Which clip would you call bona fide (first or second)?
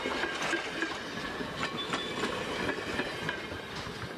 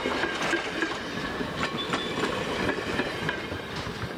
first